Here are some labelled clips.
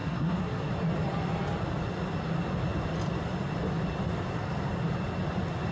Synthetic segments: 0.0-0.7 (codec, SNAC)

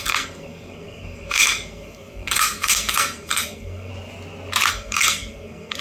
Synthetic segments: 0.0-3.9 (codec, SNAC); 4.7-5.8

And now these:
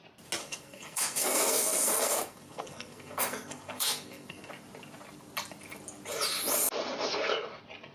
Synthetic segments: 0.4-4.5 (codec, SNAC)

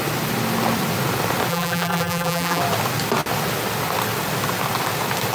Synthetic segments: 1.5-2.6 (vocoder, BigVGAN v2)